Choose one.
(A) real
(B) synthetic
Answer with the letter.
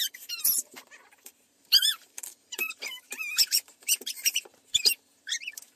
B